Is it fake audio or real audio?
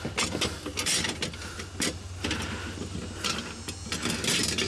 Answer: real